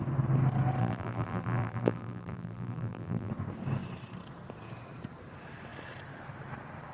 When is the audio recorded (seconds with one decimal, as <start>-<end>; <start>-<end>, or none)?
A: 0.0-0.8; 3.3-6.9